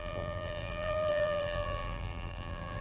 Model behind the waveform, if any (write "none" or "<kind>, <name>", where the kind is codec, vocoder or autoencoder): vocoder, BigVGAN v2